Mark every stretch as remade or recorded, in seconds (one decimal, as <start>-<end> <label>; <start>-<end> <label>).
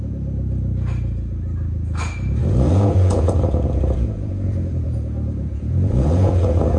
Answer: 0.0-2.4 recorded; 2.4-6.8 remade